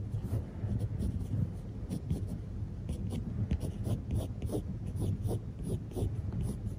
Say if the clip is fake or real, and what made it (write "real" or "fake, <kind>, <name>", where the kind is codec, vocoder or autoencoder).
real